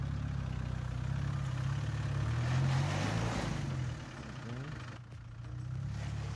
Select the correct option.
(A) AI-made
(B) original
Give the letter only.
B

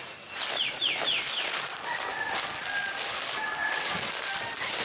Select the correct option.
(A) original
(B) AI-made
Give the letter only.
A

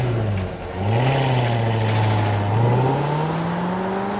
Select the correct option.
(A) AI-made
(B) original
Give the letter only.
B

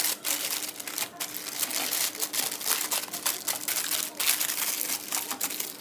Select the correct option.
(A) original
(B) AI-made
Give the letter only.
A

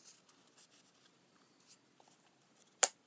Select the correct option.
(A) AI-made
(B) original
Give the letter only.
B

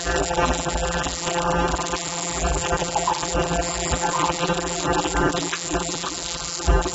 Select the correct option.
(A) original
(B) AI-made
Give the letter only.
B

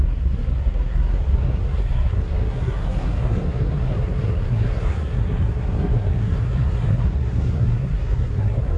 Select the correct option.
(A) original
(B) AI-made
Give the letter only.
B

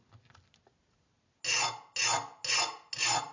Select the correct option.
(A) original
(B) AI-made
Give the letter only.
A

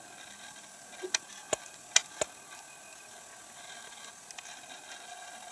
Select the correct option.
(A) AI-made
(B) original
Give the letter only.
B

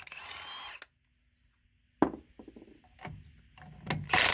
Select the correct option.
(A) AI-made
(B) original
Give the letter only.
B